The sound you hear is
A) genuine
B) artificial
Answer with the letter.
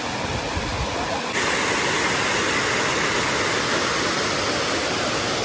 A